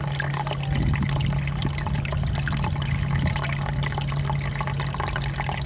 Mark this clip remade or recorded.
recorded